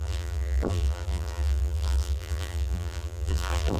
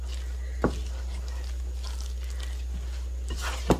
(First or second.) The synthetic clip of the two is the first